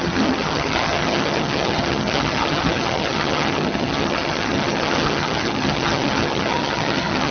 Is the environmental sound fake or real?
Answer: fake